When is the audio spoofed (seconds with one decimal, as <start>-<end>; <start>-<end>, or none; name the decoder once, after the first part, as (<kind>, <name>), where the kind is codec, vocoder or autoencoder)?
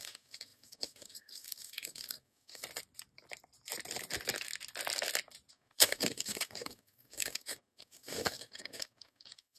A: 0.0-2.6 (codec, DAC); 5.5-9.6